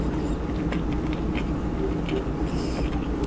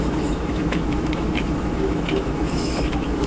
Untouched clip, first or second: first